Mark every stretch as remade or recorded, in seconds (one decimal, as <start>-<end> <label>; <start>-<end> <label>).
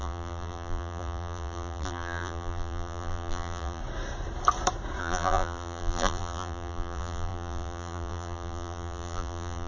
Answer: 0.0-3.8 remade; 3.8-5.0 recorded; 5.0-9.7 remade